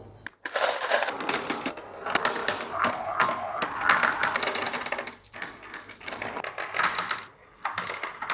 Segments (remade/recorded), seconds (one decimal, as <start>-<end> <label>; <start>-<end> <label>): 0.0-2.4 recorded; 2.4-2.9 remade; 2.9-8.3 recorded